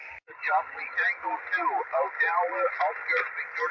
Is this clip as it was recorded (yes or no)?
no